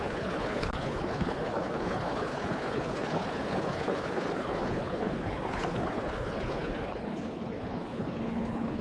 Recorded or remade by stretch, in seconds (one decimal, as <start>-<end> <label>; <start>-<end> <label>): 0.0-8.8 remade